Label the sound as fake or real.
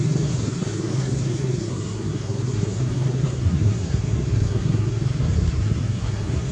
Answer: fake